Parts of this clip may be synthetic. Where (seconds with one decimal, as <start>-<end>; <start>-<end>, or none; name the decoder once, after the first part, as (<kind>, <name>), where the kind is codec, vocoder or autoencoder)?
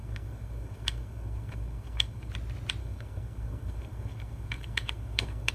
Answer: 0.0-2.3 (codec, SNAC); 2.8-5.5